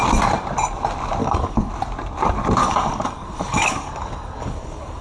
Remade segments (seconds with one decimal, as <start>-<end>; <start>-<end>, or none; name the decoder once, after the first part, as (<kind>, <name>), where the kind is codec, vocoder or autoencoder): 1.2-1.7 (codec, DAC); 2.6-5.0